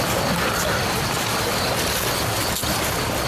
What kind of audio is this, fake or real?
real